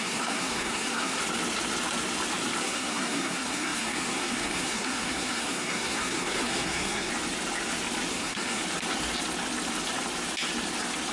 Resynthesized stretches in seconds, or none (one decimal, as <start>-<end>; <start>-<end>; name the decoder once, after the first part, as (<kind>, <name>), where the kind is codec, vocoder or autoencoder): 0.0-1.2 (codec, SNAC); 2.6-7.1; 8.1-8.6